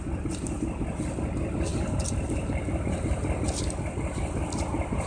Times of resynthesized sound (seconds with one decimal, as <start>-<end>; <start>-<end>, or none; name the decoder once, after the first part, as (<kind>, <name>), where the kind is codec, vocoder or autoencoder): none